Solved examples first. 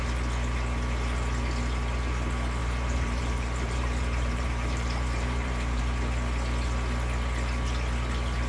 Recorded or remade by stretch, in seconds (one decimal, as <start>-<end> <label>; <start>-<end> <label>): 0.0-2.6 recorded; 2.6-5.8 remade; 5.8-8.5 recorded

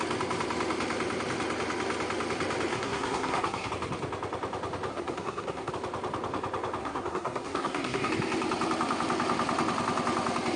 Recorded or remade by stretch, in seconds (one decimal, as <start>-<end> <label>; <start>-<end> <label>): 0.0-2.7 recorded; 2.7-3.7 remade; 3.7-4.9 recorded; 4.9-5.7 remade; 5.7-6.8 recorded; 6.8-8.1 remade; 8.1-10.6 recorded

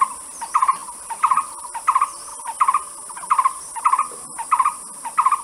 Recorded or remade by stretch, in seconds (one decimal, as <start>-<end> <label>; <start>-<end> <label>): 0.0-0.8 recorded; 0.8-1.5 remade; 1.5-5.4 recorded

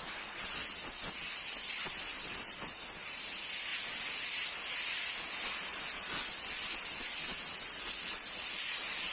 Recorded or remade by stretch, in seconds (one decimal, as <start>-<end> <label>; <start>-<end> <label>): 0.0-9.1 recorded

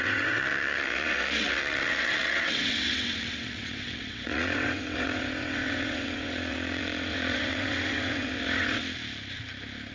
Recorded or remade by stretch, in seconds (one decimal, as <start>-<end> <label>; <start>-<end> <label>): 0.0-8.8 remade; 8.8-9.9 recorded

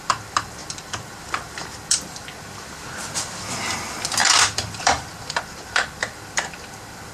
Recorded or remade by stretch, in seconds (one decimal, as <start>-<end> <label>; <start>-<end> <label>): 0.0-7.1 remade